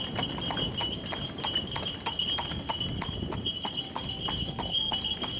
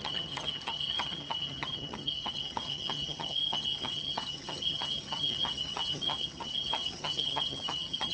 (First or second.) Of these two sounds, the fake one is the second